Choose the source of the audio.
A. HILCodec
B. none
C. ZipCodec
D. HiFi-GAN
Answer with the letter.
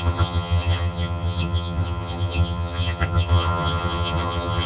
D